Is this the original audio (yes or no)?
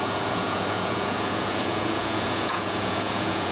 no